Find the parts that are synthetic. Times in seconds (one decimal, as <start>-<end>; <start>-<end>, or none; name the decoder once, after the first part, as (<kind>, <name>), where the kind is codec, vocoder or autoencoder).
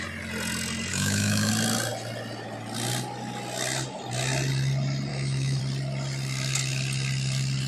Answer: 0.9-1.5 (autoencoder, DAC-VAE); 5.1-5.6